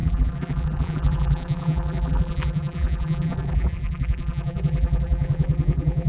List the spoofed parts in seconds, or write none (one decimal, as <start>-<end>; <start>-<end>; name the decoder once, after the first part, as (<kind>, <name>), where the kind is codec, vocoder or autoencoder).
0.0-6.1 (vocoder, BigVGAN v2)

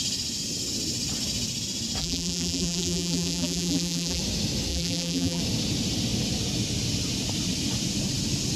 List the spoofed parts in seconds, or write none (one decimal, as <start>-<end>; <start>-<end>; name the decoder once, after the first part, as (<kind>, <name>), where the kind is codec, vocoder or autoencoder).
2.0-4.2 (vocoder, BigVGAN v2); 4.7-5.4

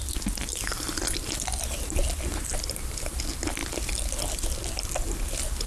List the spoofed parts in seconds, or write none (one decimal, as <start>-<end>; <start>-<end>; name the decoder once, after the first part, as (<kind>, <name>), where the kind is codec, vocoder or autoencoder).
2.3-3.2 (vocoder, BigVGAN v2)

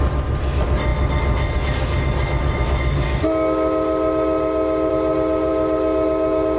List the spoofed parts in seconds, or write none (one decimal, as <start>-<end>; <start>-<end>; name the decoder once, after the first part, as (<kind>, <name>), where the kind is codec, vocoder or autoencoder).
none

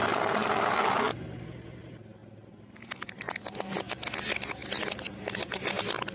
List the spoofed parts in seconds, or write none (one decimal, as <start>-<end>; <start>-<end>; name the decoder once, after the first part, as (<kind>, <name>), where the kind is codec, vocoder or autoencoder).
2.2-3.4 (vocoder, BigVGAN v2); 4.8-5.6

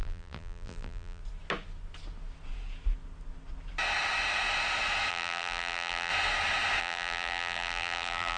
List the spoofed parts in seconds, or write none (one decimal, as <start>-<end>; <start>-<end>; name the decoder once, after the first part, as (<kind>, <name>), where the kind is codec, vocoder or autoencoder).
0.0-1.2 (vocoder, BigVGAN v2); 5.1-6.1; 6.8-8.4

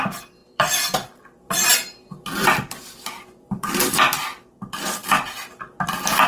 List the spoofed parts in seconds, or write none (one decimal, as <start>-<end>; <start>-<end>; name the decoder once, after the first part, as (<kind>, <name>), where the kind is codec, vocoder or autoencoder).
0.0-5.0 (vocoder, BigVGAN v2)

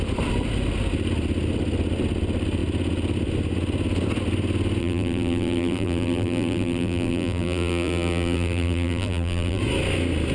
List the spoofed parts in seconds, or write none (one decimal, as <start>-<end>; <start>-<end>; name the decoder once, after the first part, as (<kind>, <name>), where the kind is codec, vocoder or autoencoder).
4.8-9.6 (vocoder, BigVGAN v2)